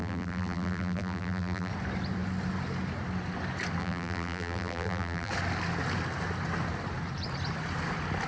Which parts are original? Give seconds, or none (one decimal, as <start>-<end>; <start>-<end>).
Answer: 1.7-3.8; 5.3-8.3